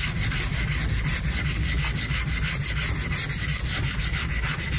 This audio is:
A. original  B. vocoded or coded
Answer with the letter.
A